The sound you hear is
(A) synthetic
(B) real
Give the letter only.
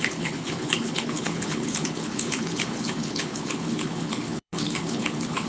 A